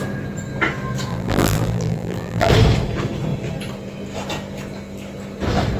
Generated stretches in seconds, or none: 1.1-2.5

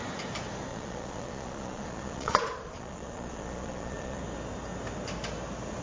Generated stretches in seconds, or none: 0.7-4.2

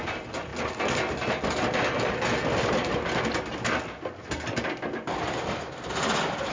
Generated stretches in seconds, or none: none

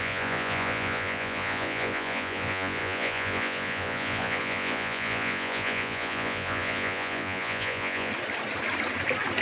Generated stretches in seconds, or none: 0.0-8.1

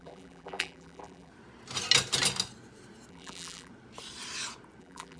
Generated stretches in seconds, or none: 0.0-1.3; 3.1-3.7; 4.8-5.2

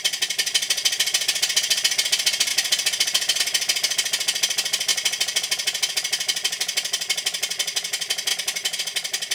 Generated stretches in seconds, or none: none

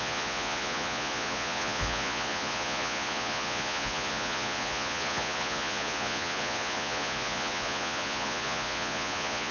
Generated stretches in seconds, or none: 0.0-9.5

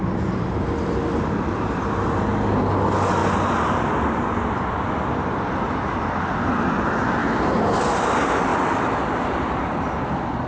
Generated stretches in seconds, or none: none